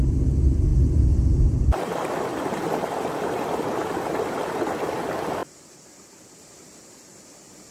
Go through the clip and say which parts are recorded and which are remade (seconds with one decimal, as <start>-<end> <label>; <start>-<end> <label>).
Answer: 0.0-0.7 remade; 0.7-1.6 recorded; 1.6-2.3 remade; 2.3-3.1 recorded; 3.1-7.7 remade